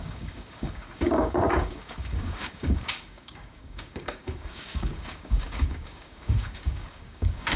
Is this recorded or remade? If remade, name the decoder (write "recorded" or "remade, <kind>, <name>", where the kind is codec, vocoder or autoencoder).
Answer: remade, codec, DAC